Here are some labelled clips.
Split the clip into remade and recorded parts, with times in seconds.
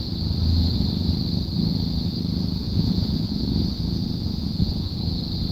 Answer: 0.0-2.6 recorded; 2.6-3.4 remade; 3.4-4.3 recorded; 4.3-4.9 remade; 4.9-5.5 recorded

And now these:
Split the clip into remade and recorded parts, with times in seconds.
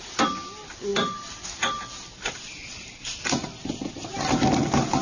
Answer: 0.0-5.0 recorded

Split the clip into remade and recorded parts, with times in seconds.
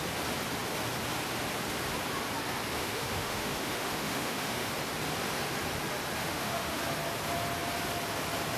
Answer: 0.0-2.8 recorded; 2.8-4.7 remade; 4.7-6.2 recorded; 6.2-6.8 remade; 6.8-8.6 recorded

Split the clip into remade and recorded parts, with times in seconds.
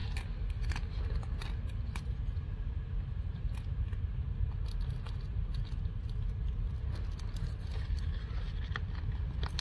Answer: 0.0-9.6 recorded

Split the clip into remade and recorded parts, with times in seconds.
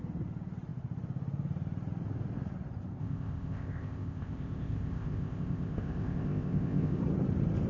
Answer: 0.0-3.0 recorded; 3.0-7.0 remade; 7.0-7.7 recorded